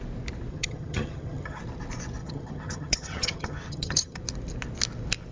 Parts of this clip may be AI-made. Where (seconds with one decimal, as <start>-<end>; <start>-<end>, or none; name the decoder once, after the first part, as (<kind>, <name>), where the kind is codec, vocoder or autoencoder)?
0.5-1.6 (vocoder, HiFi-GAN); 2.2-4.2